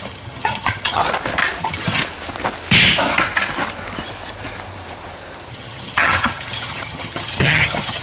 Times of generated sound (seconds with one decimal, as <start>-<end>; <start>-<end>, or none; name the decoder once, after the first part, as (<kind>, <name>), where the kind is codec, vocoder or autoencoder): 0.0-1.0 (vocoder, HiFi-GAN); 1.6-2.0; 5.5-8.0